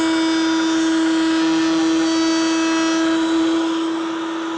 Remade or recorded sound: recorded